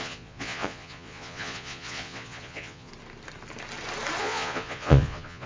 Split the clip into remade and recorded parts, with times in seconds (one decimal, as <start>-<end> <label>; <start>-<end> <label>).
0.0-2.9 remade; 2.9-4.2 recorded; 4.2-5.5 remade